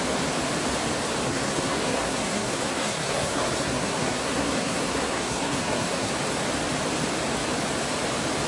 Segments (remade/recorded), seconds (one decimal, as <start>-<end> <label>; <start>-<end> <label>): 0.0-1.3 recorded; 1.3-6.1 remade; 6.1-8.5 recorded